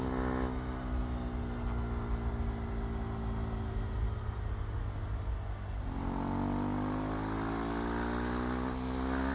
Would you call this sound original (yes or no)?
yes